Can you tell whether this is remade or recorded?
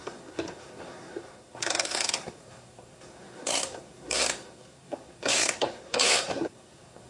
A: remade